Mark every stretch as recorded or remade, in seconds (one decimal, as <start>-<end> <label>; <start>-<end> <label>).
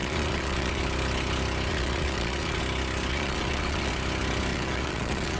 0.0-0.8 remade; 0.8-1.7 recorded; 1.7-2.6 remade; 2.6-3.1 recorded; 3.1-3.9 remade; 3.9-4.5 recorded; 4.5-5.4 remade